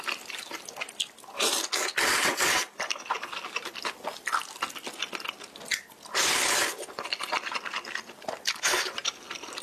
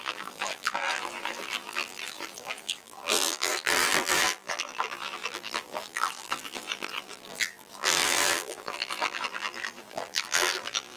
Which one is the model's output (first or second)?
second